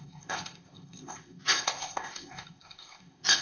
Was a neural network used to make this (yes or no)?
yes